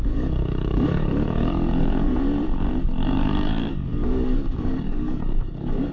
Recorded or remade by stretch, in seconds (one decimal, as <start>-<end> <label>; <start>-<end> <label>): 0.0-2.1 remade; 2.1-2.8 recorded; 2.8-5.9 remade